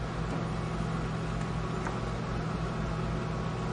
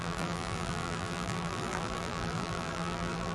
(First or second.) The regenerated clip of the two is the second